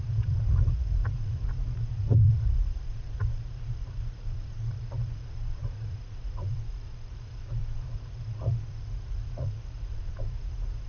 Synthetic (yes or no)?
yes